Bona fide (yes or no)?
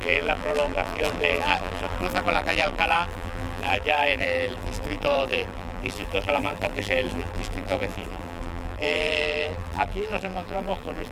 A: no